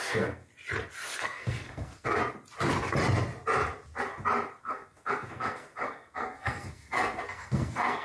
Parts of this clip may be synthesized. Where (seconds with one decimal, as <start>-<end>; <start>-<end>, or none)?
0.0-0.5; 1.2-2.2; 4.6-8.0